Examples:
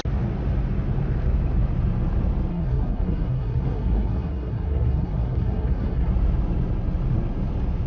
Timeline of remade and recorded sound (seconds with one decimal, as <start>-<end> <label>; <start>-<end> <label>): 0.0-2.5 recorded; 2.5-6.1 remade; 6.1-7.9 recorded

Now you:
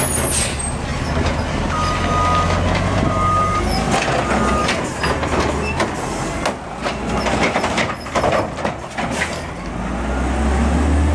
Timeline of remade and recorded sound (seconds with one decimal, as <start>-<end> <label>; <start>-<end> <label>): 0.0-11.1 recorded

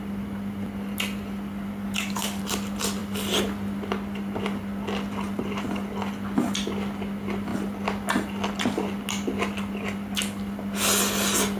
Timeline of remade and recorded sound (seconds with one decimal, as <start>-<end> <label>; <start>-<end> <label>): 0.0-1.8 recorded; 1.8-2.4 remade; 2.4-11.6 recorded

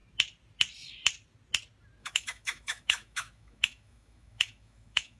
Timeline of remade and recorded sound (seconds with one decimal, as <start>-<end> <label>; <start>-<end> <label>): 0.0-2.0 recorded; 2.0-5.2 remade

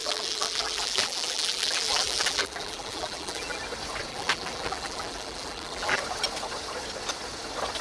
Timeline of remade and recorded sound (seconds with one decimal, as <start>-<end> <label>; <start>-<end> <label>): 0.0-3.6 remade; 3.6-4.1 recorded; 4.1-6.0 remade; 6.0-7.8 recorded

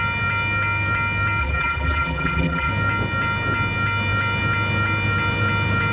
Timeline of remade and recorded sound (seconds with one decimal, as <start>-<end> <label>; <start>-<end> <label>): 0.0-1.4 recorded; 1.4-2.7 remade; 2.7-5.9 recorded

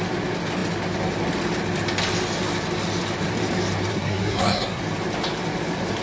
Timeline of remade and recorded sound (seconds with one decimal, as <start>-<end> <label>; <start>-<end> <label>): 0.0-3.9 recorded; 3.9-4.8 remade; 4.8-6.0 recorded